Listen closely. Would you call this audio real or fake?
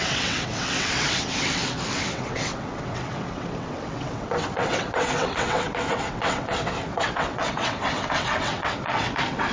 fake